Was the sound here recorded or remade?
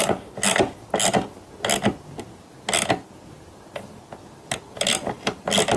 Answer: recorded